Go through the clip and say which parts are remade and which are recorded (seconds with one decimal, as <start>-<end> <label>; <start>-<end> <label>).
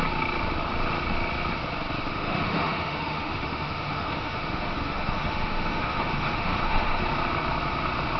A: 0.0-2.1 recorded; 2.1-7.0 remade; 7.0-8.2 recorded